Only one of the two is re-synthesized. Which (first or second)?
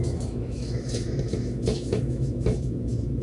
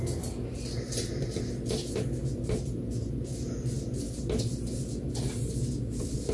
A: first